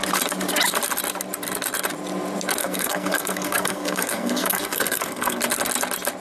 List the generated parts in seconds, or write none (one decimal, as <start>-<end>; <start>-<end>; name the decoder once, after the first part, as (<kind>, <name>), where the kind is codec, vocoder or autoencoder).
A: 2.6-5.4 (codec, SNAC)